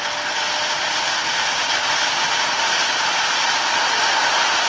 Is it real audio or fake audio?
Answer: real